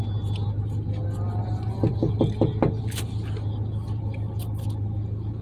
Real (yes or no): yes